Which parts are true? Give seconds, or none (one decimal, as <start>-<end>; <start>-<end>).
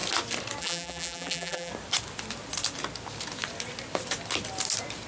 0.0-0.6; 1.7-5.1